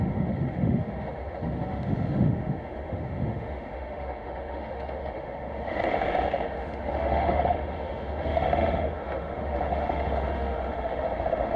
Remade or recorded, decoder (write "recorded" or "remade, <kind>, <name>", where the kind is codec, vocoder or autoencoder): remade, autoencoder, DAC-VAE